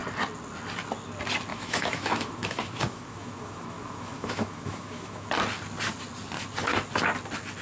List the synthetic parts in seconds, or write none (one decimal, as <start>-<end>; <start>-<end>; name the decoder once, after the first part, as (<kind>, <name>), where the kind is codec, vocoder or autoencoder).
1.5-5.3 (autoencoder, DAC-VAE)